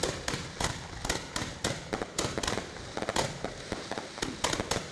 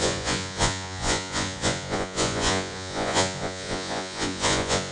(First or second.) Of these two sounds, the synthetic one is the second